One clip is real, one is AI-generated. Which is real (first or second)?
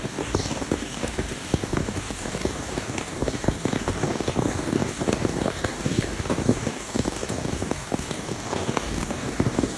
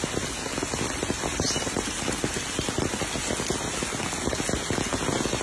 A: second